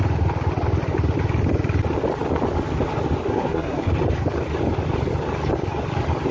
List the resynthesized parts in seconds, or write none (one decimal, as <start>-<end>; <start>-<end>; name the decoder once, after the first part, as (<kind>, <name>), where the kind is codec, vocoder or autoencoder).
3.3-3.9 (codec, SNAC)